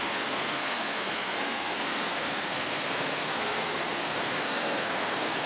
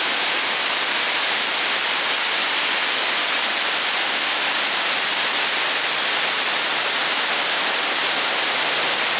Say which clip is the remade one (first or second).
first